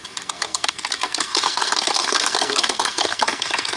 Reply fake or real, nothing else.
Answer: fake